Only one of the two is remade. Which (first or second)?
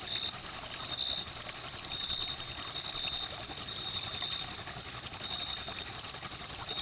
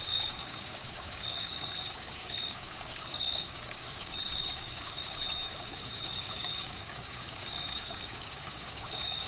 second